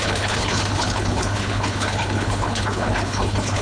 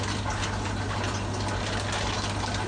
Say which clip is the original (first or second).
second